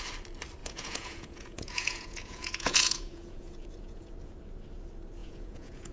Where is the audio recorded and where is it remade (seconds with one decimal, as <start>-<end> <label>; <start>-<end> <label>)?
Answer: 0.0-0.6 recorded; 0.6-4.1 remade; 4.1-5.2 recorded; 5.2-5.9 remade